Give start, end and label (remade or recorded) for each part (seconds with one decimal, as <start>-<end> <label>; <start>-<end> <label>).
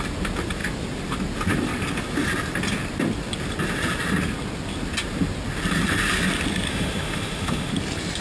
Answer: 0.0-6.7 recorded; 6.7-7.7 remade; 7.7-8.2 recorded